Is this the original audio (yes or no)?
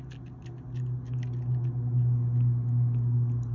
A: yes